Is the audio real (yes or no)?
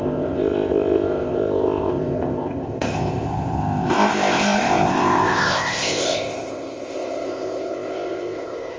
no